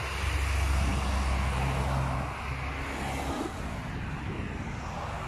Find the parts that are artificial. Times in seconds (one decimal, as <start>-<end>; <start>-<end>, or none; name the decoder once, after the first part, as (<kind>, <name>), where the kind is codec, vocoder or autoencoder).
none